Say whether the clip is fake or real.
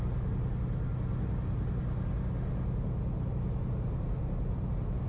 real